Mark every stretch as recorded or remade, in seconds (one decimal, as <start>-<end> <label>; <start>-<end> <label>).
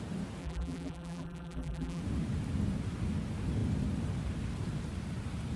0.0-0.4 recorded; 0.4-2.0 remade; 2.0-5.6 recorded